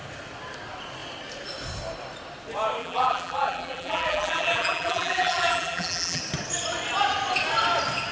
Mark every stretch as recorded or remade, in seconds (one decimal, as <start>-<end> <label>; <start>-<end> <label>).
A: 0.0-2.8 recorded; 2.8-6.2 remade; 6.2-8.1 recorded